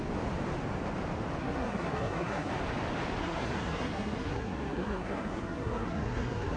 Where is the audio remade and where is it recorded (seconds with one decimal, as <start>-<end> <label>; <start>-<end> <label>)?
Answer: 0.0-1.4 recorded; 1.4-2.5 remade; 2.5-3.2 recorded; 3.2-6.6 remade